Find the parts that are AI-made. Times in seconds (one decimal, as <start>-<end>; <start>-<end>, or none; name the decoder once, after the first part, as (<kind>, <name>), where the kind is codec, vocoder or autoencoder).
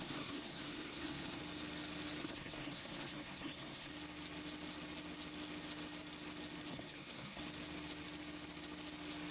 0.0-1.4 (codec, SNAC); 2.2-3.9; 6.7-7.4